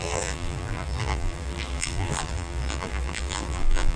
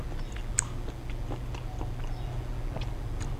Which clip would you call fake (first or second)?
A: first